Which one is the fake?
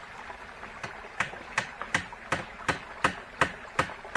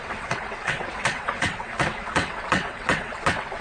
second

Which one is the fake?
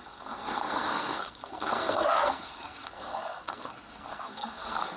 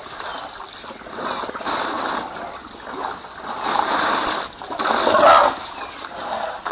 first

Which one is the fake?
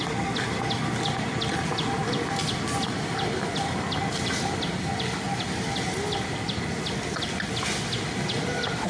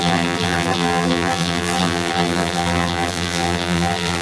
second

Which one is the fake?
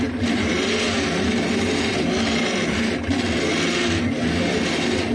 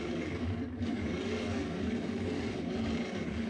second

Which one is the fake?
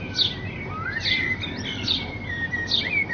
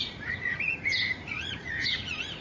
second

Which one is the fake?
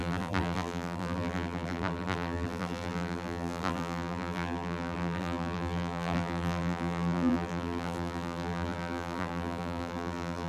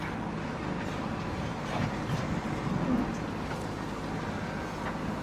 first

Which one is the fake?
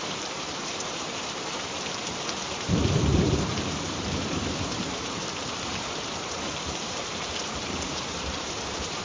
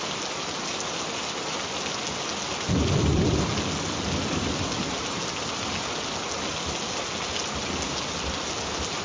first